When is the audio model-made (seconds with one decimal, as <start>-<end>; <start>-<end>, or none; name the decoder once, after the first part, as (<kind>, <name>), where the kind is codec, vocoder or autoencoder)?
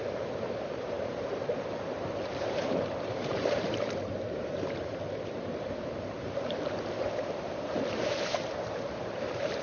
0.0-9.6 (vocoder, BigVGAN v2)